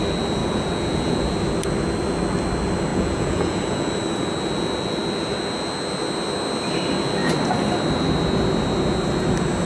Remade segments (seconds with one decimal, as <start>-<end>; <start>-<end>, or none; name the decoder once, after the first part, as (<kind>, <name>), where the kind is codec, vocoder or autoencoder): 0.4-1.2 (vocoder, Vocos); 2.9-3.9

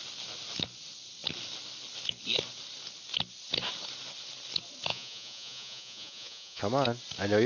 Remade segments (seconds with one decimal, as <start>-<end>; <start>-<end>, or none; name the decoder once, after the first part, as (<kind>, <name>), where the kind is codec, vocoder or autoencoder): 4.9-6.6 (vocoder, Vocos)

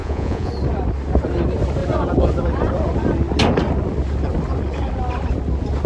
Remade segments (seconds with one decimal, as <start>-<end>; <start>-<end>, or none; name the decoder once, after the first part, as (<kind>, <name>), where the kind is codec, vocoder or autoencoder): 0.0-0.5 (vocoder, Vocos)

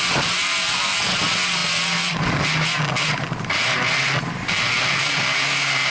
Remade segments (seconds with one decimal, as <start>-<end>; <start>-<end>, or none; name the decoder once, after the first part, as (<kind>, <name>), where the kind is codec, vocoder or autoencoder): none

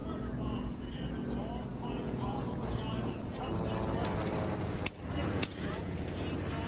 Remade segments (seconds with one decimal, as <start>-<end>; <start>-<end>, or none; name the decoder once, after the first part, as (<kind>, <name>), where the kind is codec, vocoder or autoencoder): 0.0-0.9 (vocoder, Vocos); 1.7-3.4; 5.2-6.2

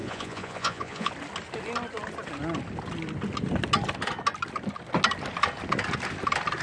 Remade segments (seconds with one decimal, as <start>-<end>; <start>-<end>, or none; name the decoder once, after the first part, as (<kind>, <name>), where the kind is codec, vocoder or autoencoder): 0.0-1.1 (vocoder, Vocos)

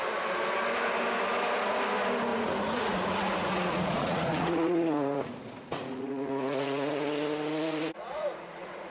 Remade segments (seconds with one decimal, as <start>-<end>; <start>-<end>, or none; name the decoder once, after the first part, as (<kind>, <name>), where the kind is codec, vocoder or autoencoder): 2.3-6.9 (vocoder, Vocos); 7.5-8.9